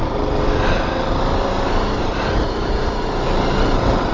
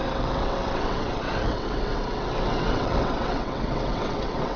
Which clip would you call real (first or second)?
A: first